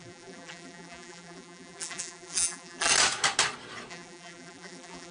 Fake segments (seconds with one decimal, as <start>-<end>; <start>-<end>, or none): 0.0-2.9; 3.9-5.1